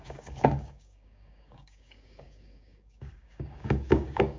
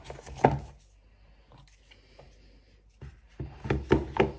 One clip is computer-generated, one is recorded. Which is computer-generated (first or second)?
first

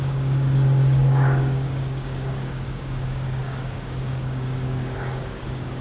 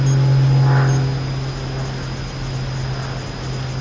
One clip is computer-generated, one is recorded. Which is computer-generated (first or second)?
first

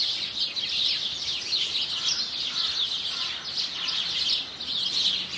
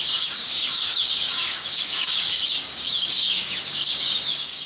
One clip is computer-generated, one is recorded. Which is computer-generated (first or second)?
second